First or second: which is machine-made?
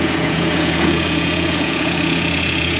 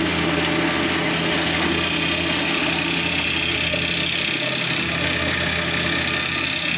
first